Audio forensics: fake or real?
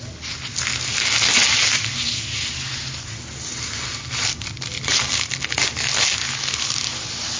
real